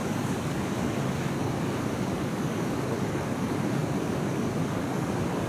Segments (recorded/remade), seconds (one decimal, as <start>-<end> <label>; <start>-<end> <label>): 0.0-5.5 remade